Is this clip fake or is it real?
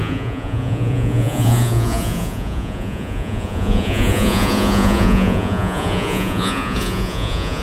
fake